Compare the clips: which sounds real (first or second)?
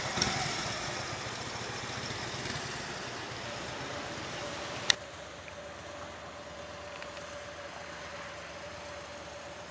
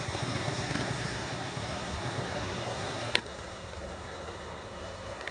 first